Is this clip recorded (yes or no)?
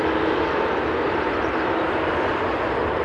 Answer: yes